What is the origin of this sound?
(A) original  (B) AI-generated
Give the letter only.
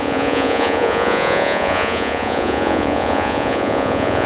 B